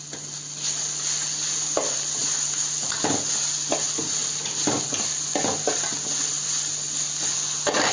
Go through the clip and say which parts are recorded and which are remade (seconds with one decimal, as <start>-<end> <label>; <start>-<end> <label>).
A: 0.0-1.2 recorded; 1.2-2.2 remade; 2.2-7.9 recorded